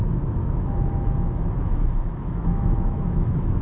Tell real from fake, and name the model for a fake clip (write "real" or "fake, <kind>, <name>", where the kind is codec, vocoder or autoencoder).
fake, autoencoder, DAC-VAE